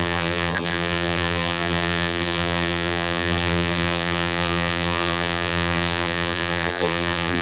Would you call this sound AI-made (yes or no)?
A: yes